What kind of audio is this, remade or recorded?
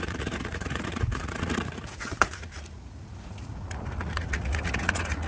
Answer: remade